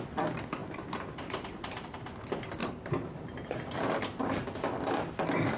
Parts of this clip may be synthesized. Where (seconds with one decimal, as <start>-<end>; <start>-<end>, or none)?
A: 0.6-2.1; 2.6-4.0